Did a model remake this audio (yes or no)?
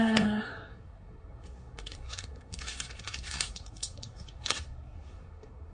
yes